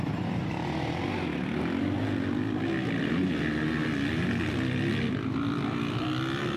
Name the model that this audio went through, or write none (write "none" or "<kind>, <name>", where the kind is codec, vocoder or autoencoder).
none